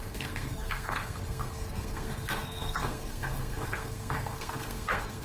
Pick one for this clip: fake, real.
fake